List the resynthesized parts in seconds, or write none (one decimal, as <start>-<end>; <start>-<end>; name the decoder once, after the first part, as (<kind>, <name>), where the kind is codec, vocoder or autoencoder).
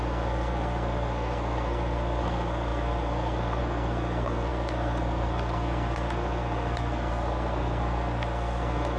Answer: 0.0-9.0 (codec, SNAC)